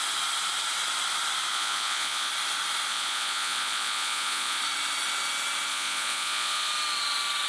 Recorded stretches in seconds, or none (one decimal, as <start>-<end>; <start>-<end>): 0.0-1.5; 2.3-2.9; 4.6-5.7; 6.7-7.5